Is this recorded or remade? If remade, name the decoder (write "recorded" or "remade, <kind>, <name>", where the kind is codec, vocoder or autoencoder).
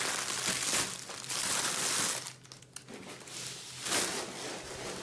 recorded